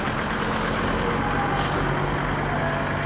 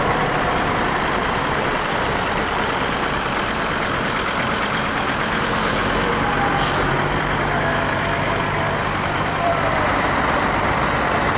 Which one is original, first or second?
first